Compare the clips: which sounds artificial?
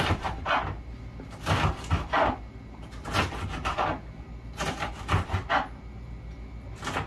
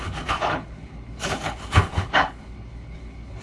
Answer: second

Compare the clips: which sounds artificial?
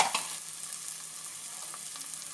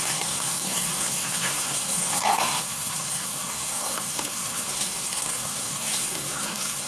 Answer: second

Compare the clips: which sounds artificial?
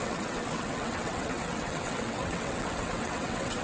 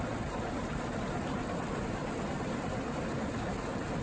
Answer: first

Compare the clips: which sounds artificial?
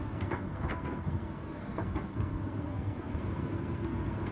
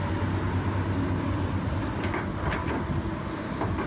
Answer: first